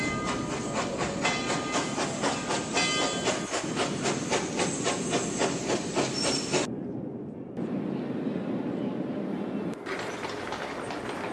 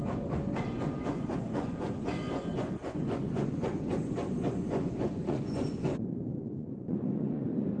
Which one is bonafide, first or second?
first